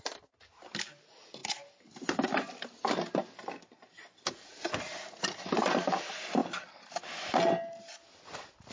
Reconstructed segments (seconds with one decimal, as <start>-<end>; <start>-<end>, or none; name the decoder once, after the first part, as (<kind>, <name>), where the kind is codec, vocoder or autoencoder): none